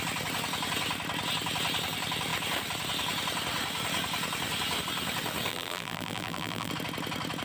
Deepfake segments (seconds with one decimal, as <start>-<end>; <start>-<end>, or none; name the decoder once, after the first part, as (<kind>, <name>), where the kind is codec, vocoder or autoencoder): 5.5-6.7 (vocoder, BigVGAN v2)